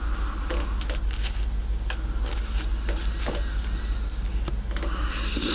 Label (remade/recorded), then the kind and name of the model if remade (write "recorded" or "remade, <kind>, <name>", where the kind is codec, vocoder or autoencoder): recorded